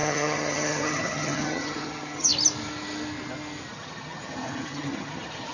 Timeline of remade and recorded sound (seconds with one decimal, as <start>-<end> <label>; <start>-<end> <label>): 0.0-2.3 remade; 2.3-3.7 recorded; 3.7-5.5 remade